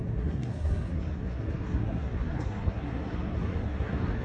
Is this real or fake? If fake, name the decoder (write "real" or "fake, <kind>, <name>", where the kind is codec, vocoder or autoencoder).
fake, codec, SNAC